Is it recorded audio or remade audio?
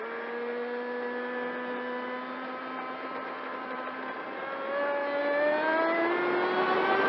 recorded